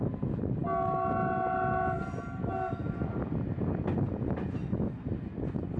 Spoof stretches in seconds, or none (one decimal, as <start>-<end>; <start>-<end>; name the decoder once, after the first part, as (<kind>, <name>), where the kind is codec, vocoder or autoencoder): none